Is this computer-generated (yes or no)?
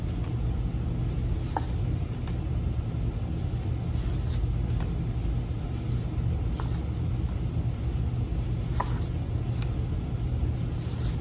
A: no